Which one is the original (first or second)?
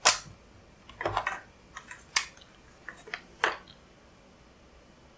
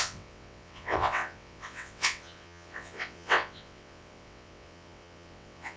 first